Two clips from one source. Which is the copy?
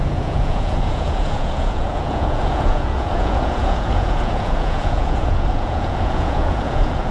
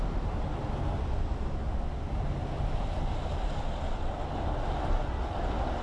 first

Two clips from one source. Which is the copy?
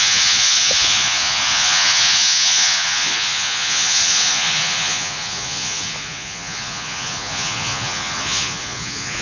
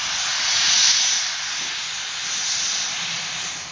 first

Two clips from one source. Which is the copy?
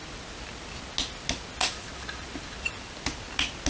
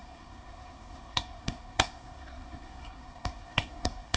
second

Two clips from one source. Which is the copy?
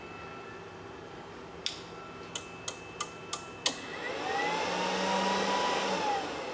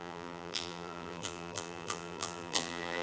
second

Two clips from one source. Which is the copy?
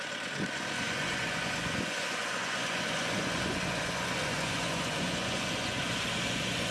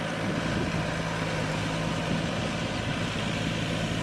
first